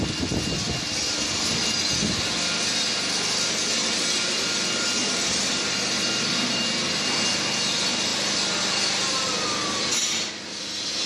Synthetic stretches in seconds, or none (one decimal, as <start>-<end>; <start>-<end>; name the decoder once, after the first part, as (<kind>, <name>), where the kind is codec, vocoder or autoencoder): none